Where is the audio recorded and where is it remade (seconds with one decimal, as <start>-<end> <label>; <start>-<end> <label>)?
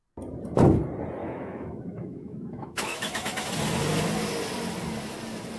0.0-1.2 recorded; 1.2-3.5 remade; 3.5-5.6 recorded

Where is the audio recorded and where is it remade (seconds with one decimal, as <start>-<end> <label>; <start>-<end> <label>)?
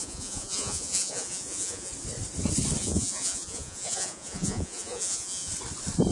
0.0-1.9 remade; 1.9-2.8 recorded; 2.8-5.5 remade; 5.5-6.1 recorded